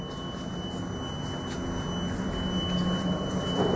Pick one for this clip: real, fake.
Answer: real